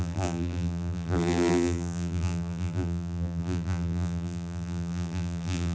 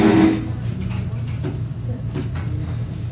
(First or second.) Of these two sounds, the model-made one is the first